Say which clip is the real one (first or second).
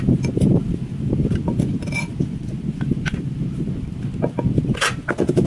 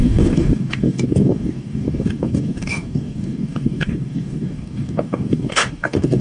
first